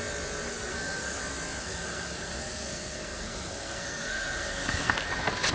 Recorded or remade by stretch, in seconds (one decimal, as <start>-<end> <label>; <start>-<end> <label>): 0.0-0.5 recorded; 0.5-1.2 remade; 1.2-1.6 recorded; 1.6-4.9 remade; 4.9-5.5 recorded

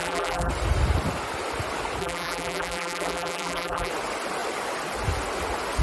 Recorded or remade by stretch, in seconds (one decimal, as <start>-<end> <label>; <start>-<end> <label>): 0.0-0.5 remade; 0.5-2.0 recorded; 2.0-3.9 remade; 3.9-5.8 recorded

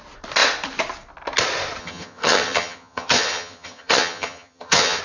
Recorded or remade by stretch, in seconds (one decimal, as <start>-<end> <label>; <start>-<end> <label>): 0.0-1.8 recorded; 1.8-5.0 remade

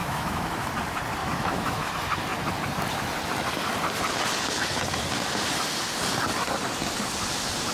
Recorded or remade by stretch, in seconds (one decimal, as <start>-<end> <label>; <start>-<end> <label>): 0.0-0.7 remade; 0.7-1.2 recorded; 1.2-1.9 remade; 1.9-7.7 recorded